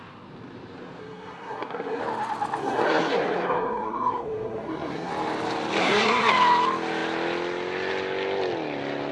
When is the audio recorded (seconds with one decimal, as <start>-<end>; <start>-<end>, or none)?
0.0-1.0; 2.0-2.6; 5.1-5.8; 6.3-9.1